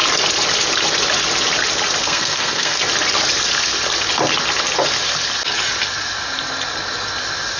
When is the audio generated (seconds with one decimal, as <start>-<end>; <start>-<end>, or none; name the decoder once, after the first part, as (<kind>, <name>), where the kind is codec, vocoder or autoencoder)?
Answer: 2.0-2.8 (codec, SNAC)